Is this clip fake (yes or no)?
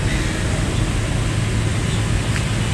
no